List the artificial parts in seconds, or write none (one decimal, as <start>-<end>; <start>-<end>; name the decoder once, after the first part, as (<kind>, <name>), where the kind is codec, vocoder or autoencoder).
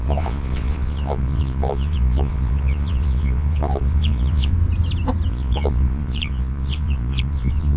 0.0-4.5 (vocoder, Vocos); 5.3-7.8